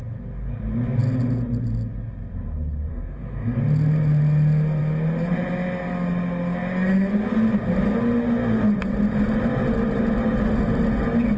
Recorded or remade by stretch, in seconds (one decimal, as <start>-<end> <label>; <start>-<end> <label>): 0.0-2.9 recorded; 2.9-3.6 remade; 3.6-11.4 recorded

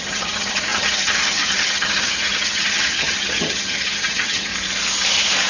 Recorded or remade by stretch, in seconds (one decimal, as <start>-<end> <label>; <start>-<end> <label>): 0.0-4.5 remade; 4.5-5.5 recorded

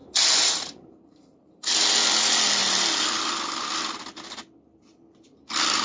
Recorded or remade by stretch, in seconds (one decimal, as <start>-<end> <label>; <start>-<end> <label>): 0.0-1.9 remade; 1.9-5.8 recorded

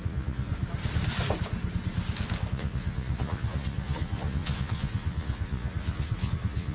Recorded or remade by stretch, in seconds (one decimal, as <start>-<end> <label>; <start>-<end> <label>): 0.0-0.5 remade; 0.5-2.5 recorded; 2.5-6.7 remade